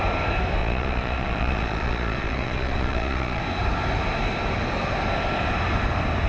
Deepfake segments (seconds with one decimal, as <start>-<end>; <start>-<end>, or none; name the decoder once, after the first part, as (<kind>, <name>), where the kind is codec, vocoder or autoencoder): 0.6-3.4 (vocoder, Vocos)